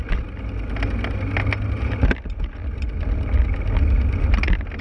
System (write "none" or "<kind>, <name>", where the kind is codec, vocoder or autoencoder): none